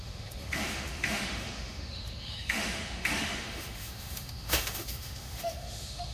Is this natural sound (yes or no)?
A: no